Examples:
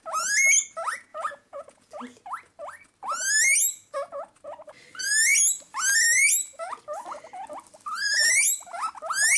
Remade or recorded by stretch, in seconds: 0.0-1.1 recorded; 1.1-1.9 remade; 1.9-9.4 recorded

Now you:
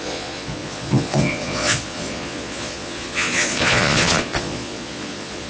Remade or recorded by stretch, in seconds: 0.0-5.5 remade

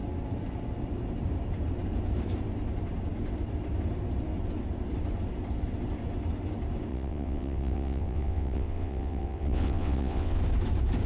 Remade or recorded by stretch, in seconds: 0.0-6.9 recorded; 6.9-10.4 remade; 10.4-11.1 recorded

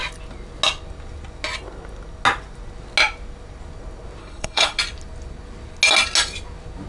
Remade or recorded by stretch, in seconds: 0.0-4.2 recorded; 4.2-4.8 remade; 4.8-6.9 recorded

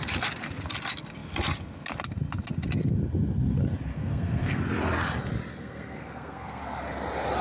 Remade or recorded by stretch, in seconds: 0.0-3.9 recorded; 3.9-4.6 remade; 4.6-5.5 recorded; 5.5-6.6 remade; 6.6-7.4 recorded